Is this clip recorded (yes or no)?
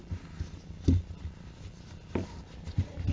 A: yes